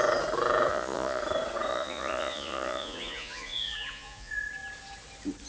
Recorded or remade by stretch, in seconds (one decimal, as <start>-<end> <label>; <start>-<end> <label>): 0.0-0.7 recorded; 0.7-1.2 remade; 1.2-1.7 recorded; 1.7-4.3 remade; 4.3-5.5 recorded